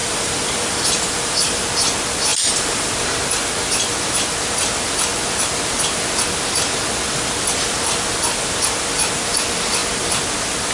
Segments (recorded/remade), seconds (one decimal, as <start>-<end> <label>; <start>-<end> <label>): 0.0-1.6 remade; 1.6-2.3 recorded; 2.3-2.9 remade; 2.9-10.7 recorded